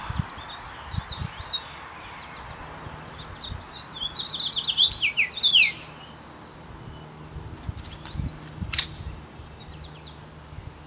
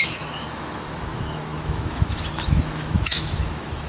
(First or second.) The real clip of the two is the first